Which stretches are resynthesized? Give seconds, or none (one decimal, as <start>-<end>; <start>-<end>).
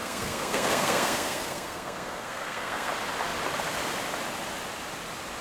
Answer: 0.0-2.9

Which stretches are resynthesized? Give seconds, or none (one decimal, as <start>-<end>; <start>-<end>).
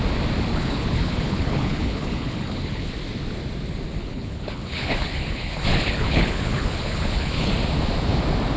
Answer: 0.5-2.9; 4.0-7.5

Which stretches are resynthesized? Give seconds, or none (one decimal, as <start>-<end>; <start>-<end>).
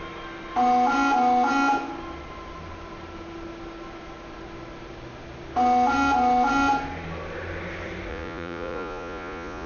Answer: 8.1-9.7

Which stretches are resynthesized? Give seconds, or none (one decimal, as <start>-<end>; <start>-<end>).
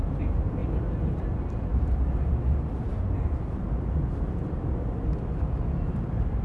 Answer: none